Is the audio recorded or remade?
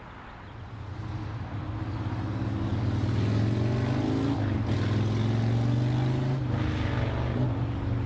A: recorded